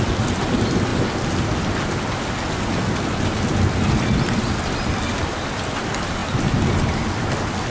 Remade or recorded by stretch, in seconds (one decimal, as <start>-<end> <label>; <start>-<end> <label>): 0.0-7.7 recorded